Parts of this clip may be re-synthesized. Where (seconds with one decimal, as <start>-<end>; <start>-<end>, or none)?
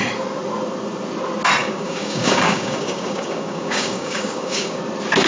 1.6-4.8